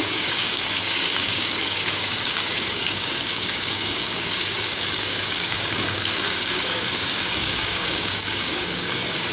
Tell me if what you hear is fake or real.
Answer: fake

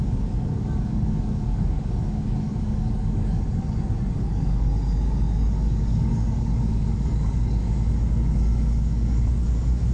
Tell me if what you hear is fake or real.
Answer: fake